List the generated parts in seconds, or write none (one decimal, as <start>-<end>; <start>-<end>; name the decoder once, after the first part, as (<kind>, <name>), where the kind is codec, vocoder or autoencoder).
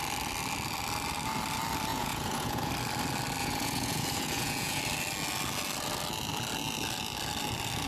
1.9-2.7 (vocoder, Vocos); 3.4-4.8